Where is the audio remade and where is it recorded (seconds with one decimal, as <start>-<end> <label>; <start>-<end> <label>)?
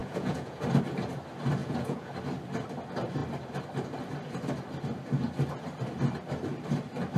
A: 0.0-0.6 remade; 0.6-1.6 recorded; 1.6-2.1 remade; 2.1-7.2 recorded